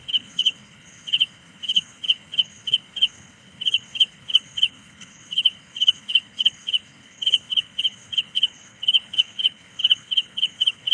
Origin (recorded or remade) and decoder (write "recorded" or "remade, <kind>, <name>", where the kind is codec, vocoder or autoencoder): remade, codec, HILCodec